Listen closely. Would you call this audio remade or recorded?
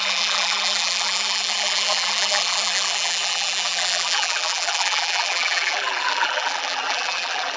remade